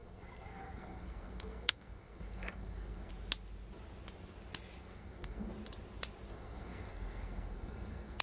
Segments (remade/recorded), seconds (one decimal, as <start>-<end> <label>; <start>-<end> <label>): 0.0-3.1 remade; 3.1-4.8 recorded; 4.8-5.5 remade; 5.5-6.3 recorded; 6.3-8.2 remade